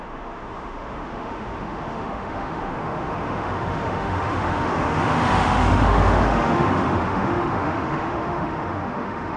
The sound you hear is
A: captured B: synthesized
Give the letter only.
B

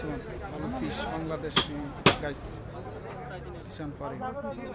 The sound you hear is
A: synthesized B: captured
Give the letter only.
B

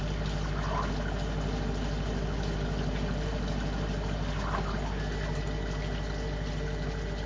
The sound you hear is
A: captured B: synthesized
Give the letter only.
A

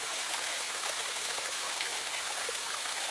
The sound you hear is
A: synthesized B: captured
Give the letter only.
A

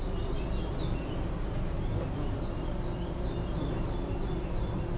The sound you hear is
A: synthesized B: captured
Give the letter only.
B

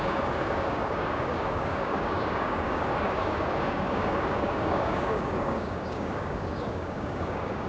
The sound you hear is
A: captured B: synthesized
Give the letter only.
B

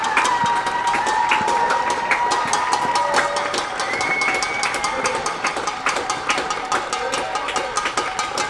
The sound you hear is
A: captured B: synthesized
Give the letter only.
A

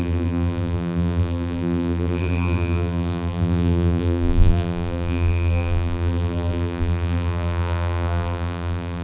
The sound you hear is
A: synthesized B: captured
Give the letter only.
A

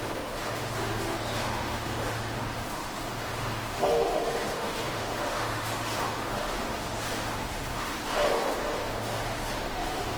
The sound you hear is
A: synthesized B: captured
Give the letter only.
A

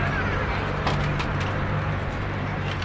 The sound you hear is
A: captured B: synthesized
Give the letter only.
B